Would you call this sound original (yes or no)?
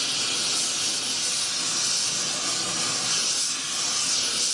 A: yes